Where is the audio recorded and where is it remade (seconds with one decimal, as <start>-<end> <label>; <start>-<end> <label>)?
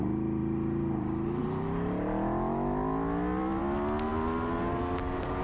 0.0-5.4 recorded